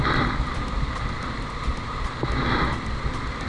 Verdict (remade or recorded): recorded